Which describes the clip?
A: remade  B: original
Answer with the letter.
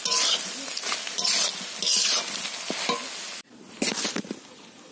B